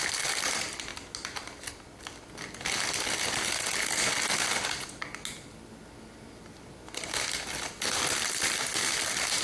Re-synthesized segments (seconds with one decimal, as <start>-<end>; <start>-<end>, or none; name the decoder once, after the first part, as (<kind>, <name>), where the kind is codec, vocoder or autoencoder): none